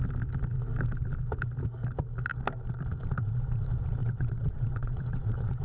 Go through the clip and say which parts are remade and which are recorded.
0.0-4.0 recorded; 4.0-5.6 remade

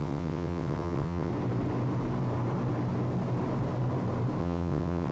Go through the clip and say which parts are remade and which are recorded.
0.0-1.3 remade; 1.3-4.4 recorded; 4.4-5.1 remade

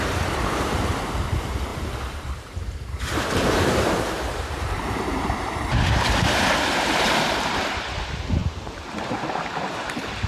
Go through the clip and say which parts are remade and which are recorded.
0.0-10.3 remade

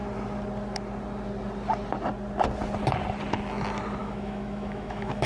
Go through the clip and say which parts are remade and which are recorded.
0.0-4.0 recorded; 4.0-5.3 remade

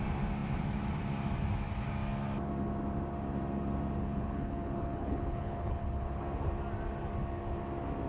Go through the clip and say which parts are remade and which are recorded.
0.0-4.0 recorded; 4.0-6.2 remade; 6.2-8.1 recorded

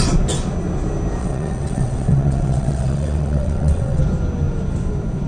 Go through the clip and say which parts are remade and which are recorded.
0.0-1.2 recorded; 1.2-4.0 remade; 4.0-5.3 recorded